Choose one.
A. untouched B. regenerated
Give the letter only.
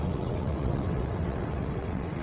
B